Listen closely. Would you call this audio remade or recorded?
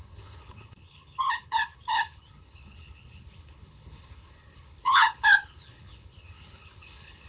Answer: remade